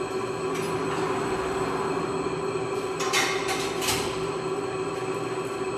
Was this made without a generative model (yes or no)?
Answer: yes